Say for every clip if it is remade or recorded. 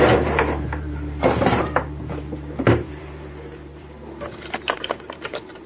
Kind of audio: remade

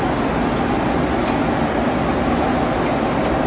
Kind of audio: recorded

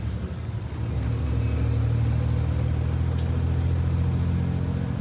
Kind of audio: recorded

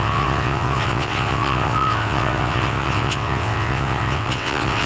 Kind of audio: remade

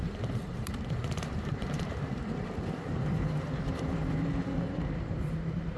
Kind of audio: remade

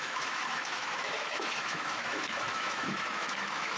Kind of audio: remade